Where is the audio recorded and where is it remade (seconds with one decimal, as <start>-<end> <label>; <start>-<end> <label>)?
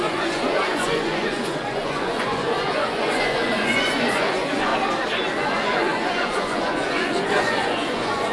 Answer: 0.0-4.7 remade; 4.7-5.3 recorded; 5.3-8.3 remade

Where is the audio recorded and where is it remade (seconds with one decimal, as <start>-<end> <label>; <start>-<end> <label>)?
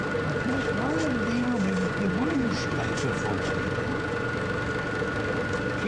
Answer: 0.0-1.8 recorded; 1.8-4.3 remade; 4.3-5.9 recorded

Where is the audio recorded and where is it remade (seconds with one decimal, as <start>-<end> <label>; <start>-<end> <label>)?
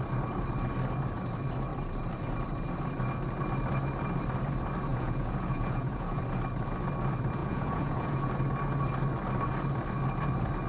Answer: 0.0-4.9 recorded; 4.9-6.2 remade; 6.2-7.4 recorded; 7.4-8.3 remade; 8.3-10.7 recorded